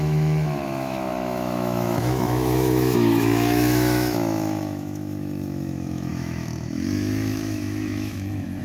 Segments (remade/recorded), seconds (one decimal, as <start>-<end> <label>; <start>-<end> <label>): 0.0-8.6 remade